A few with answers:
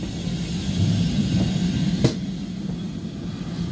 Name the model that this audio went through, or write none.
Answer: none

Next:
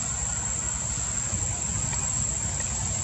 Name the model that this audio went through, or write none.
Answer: none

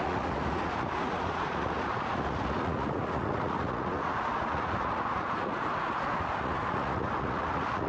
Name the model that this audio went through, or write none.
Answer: vocoder, Vocos